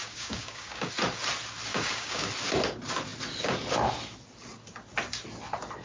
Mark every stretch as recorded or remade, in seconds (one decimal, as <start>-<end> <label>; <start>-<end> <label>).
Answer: 0.0-0.9 remade; 0.9-1.7 recorded; 1.7-2.3 remade; 2.3-5.8 recorded